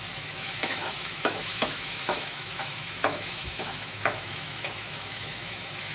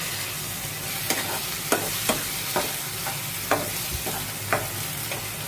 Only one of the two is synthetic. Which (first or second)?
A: first